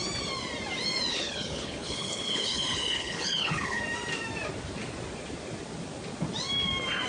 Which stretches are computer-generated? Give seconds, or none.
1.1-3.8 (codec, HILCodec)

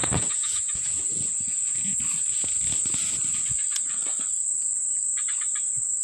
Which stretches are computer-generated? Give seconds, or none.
0.0-2.0 (vocoder, Vocos)